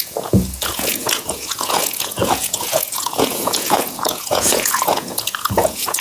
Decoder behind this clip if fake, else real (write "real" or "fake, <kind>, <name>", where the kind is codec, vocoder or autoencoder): fake, vocoder, Vocos